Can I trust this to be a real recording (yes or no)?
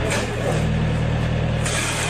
yes